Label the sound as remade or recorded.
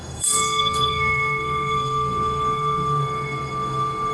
remade